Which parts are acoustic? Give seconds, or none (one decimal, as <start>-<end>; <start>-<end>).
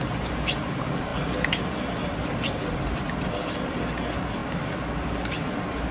none